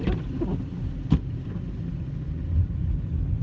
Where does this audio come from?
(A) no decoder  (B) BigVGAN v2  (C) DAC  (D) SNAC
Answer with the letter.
A